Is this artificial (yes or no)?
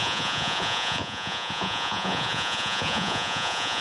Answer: yes